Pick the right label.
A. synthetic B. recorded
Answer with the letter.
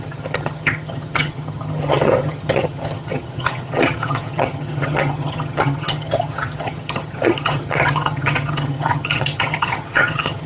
A